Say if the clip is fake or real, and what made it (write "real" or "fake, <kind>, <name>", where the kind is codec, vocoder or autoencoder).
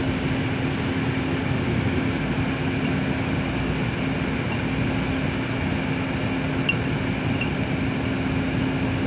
real